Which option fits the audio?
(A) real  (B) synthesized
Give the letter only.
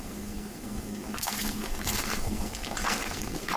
B